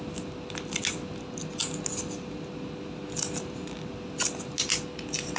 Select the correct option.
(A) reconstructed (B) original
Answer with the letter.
B